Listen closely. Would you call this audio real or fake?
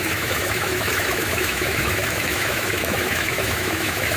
fake